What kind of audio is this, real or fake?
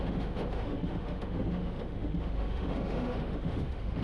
fake